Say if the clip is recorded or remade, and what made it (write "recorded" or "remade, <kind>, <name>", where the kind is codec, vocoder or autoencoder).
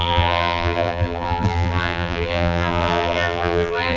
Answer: remade, vocoder, BigVGAN v2